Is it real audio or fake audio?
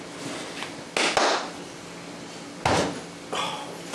real